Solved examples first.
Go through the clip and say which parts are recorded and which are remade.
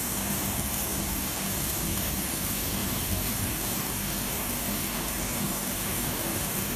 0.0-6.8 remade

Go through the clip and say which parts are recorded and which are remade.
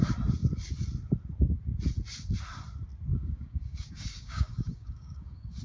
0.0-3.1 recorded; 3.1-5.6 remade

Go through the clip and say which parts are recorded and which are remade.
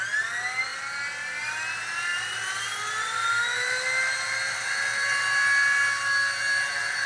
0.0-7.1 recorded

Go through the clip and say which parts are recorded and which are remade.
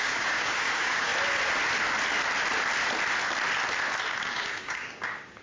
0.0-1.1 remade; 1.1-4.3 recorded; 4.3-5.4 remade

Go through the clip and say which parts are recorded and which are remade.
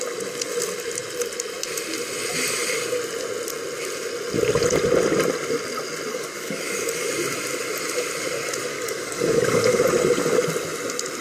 0.0-6.1 recorded; 6.1-7.1 remade; 7.1-8.7 recorded; 8.7-9.8 remade; 9.8-11.2 recorded